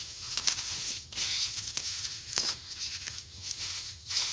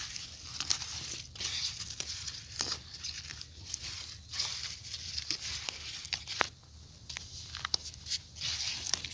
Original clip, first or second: second